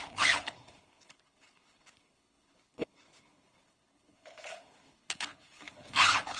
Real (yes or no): no